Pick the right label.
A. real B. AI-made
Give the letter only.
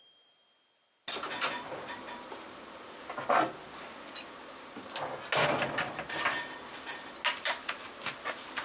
A